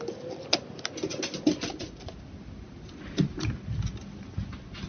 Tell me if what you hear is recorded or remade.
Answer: recorded